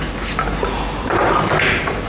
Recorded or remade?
recorded